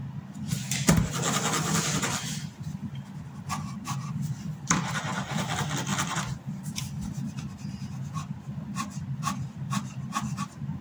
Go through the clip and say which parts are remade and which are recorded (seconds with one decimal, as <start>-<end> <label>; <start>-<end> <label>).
0.0-10.8 recorded